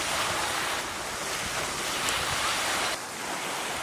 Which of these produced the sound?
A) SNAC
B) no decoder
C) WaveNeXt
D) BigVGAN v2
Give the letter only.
B